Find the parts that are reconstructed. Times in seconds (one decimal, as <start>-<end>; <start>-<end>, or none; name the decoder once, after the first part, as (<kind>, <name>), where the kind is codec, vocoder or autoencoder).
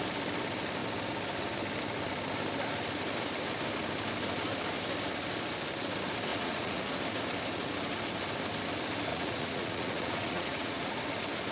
6.3-7.0 (vocoder, Vocos); 9.1-11.0